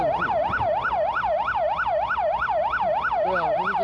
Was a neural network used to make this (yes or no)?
no